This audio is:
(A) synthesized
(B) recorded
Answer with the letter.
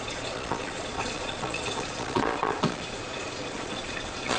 A